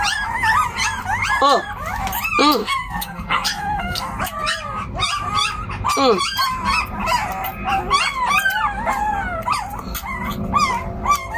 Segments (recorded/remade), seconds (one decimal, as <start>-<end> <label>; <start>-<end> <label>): 0.0-2.6 recorded; 2.6-4.2 remade; 4.2-11.4 recorded